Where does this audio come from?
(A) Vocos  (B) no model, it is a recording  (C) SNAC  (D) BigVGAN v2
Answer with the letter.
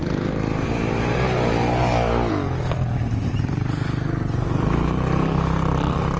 B